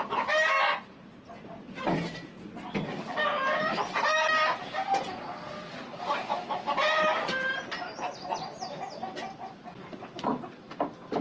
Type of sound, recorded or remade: recorded